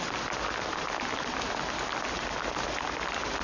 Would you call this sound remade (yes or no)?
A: no